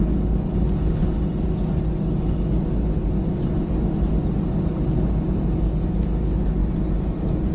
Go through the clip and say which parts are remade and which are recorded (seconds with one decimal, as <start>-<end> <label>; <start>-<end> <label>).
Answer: 0.0-7.5 recorded